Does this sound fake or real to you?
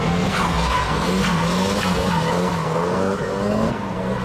fake